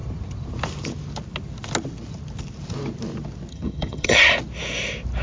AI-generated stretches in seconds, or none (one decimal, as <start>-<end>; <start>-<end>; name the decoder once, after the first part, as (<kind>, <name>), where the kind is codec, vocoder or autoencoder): 3.5-4.3 (vocoder, HiFi-GAN)